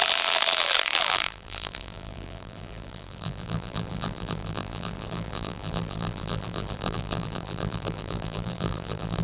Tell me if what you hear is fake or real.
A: fake